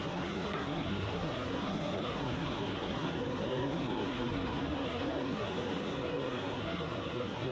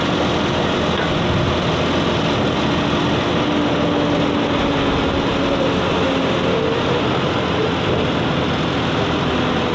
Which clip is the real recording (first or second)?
second